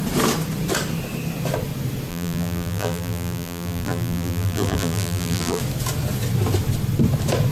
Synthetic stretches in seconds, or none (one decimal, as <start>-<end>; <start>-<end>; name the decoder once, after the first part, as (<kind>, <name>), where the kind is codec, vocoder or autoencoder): 2.1-5.6 (vocoder, BigVGAN v2)